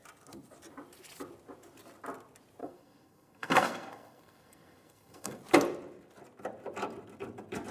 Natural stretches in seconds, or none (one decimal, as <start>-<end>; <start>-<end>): 0.0-2.6; 5.4-7.7